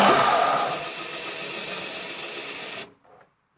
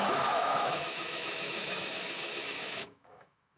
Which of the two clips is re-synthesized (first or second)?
second